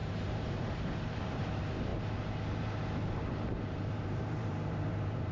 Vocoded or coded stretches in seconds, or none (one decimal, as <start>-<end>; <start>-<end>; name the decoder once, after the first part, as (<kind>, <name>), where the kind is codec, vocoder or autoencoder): 0.0-5.3 (vocoder, BigVGAN v2)